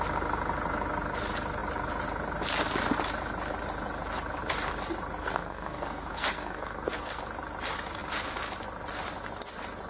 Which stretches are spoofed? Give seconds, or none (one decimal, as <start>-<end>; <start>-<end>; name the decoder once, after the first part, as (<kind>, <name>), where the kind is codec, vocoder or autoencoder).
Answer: 5.2-7.2 (codec, SNAC)